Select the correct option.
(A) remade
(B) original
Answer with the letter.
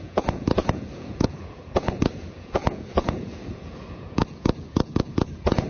A